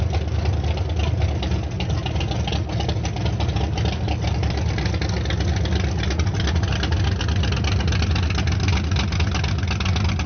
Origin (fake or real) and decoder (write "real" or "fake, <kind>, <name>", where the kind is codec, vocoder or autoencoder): real